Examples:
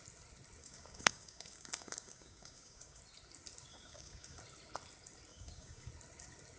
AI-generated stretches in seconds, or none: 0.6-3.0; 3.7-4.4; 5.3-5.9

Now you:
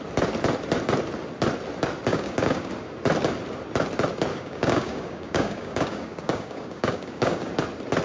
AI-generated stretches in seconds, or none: 2.1-2.7; 4.3-7.5

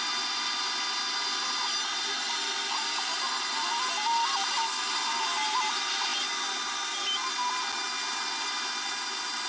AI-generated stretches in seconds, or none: none

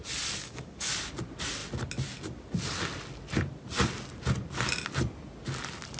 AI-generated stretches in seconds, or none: 0.4-0.9

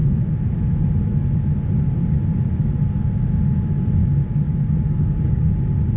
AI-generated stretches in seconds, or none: 0.0-0.5; 4.0-5.5

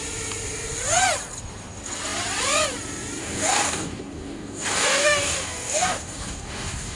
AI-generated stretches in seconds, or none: 3.2-7.0

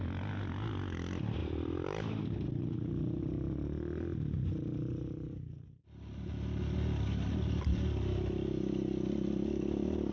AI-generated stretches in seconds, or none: none

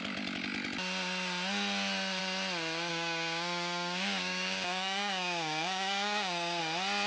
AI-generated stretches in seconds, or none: 2.9-6.6